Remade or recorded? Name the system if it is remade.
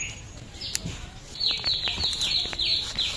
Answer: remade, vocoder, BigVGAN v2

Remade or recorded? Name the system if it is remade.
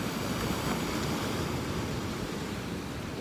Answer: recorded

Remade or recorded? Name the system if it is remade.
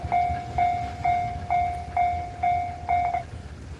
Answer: recorded